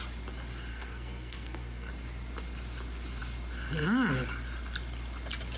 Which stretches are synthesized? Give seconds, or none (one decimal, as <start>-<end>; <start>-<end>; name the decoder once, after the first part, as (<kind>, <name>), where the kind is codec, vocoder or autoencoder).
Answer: 0.7-1.9 (codec, SNAC)